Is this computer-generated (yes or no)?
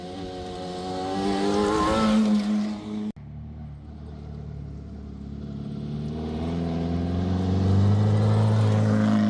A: no